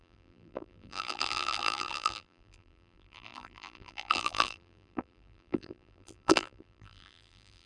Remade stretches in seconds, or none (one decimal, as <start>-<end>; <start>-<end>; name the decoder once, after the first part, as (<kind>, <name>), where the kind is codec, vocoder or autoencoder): 0.0-7.7 (vocoder, BigVGAN v2)